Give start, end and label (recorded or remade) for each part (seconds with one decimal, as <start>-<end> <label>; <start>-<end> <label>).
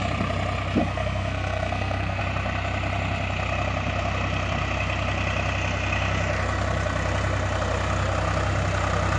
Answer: 0.0-0.8 recorded; 0.8-2.2 remade; 2.2-9.2 recorded